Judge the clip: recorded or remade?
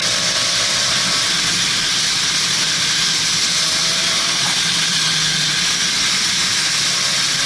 recorded